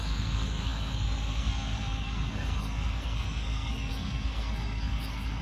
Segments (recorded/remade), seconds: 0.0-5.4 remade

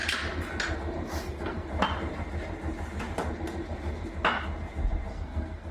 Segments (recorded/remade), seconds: 0.0-1.2 recorded; 1.2-1.7 remade; 1.7-5.1 recorded; 5.1-5.7 remade

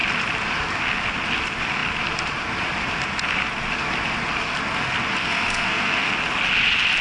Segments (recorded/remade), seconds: 0.0-5.2 recorded; 5.2-6.1 remade; 6.1-7.0 recorded

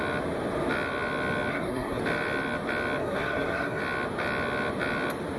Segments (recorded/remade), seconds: 0.0-1.5 recorded; 1.5-2.0 remade; 2.0-3.0 recorded; 3.0-3.8 remade; 3.8-5.4 recorded

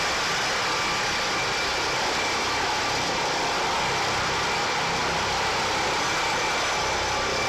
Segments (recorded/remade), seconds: 0.0-7.5 recorded

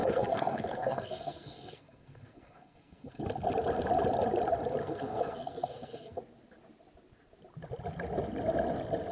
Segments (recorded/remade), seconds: 0.0-3.2 remade; 3.2-4.8 recorded; 4.8-6.2 remade; 6.2-9.1 recorded

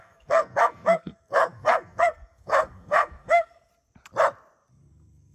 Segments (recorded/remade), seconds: 0.0-3.7 remade; 3.7-4.7 recorded; 4.7-5.3 remade